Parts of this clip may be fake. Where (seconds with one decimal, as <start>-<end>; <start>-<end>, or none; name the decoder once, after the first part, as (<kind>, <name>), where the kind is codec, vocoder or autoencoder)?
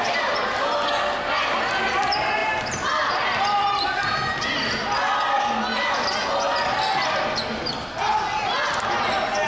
none